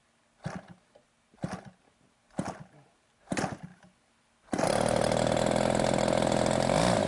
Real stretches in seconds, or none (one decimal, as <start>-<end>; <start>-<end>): 0.0-7.1